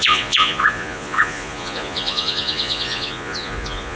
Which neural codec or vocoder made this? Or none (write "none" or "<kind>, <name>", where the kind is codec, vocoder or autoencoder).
vocoder, Vocos